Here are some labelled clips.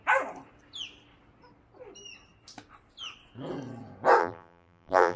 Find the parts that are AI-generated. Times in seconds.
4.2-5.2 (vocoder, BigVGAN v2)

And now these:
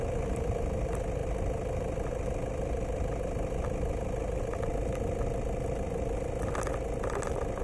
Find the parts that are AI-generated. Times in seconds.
none